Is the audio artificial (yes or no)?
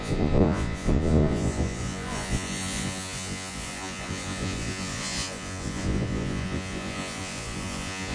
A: yes